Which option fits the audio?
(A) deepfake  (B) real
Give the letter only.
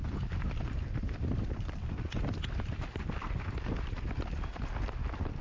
B